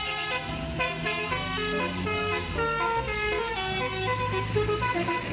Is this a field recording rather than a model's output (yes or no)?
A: yes